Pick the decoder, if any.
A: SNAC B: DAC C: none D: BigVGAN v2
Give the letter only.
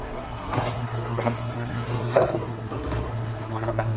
A